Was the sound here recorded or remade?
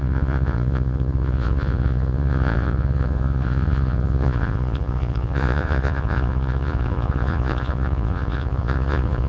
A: remade